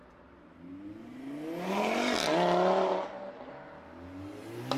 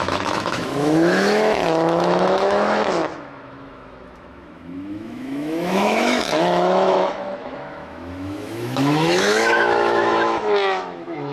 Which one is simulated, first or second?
second